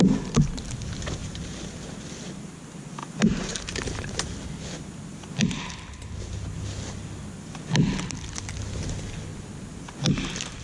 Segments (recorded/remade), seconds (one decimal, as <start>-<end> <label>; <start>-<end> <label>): 0.0-1.2 recorded; 1.2-2.0 remade; 2.0-3.0 recorded; 3.0-4.6 remade; 4.6-10.6 recorded